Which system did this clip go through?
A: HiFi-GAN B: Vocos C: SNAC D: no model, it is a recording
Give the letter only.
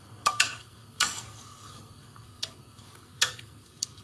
C